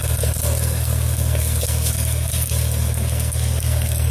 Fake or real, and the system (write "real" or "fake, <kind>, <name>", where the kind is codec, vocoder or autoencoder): fake, codec, SNAC